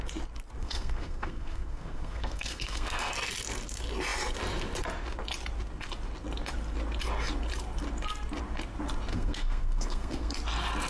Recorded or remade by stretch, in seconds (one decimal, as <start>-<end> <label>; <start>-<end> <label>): 0.0-0.6 recorded; 0.6-3.1 remade; 3.1-9.1 recorded; 9.1-10.3 remade; 10.3-10.9 recorded